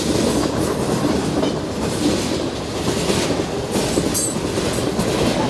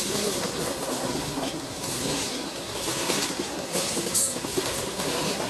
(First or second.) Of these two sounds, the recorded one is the first